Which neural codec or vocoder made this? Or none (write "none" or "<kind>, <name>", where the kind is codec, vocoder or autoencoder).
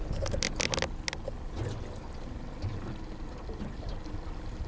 none